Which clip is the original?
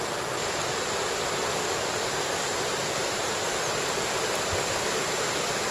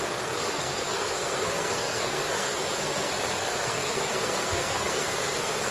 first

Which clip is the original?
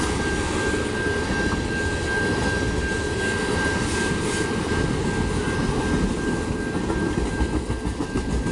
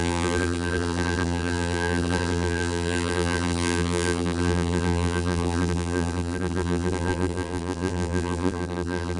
first